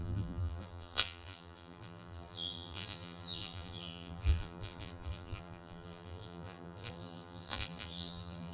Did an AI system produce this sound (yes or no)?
yes